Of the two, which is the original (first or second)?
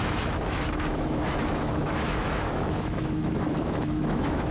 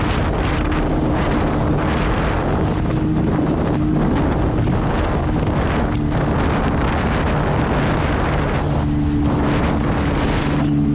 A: second